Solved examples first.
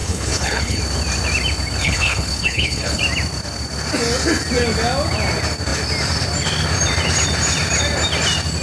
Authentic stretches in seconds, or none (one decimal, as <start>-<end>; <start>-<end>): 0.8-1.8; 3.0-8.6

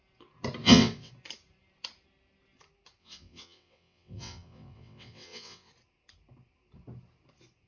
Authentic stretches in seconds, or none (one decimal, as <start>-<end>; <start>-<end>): 0.0-0.6; 1.1-3.0; 5.7-7.7

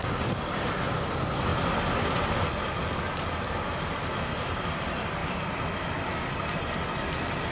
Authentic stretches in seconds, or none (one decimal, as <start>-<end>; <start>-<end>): 0.7-5.2; 6.0-7.5

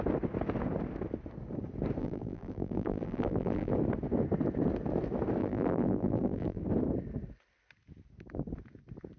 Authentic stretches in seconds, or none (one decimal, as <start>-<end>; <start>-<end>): 0.0-2.0; 3.7-5.4; 6.6-9.2